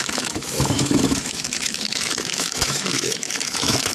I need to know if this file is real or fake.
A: fake